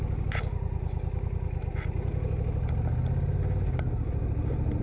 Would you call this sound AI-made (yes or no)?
no